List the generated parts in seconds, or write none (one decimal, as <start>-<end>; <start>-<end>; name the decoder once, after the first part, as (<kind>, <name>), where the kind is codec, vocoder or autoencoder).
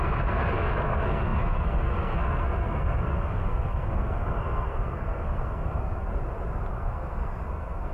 0.0-6.1 (codec, SNAC); 6.7-7.9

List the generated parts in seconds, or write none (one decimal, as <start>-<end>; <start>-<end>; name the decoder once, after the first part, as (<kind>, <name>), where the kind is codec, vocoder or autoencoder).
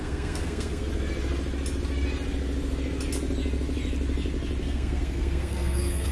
0.0-0.9 (codec, SNAC); 4.6-6.1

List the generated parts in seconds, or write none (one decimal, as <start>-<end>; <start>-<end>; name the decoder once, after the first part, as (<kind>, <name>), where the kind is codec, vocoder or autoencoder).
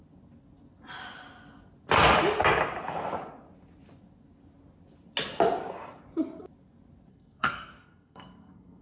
7.1-8.8 (codec, SNAC)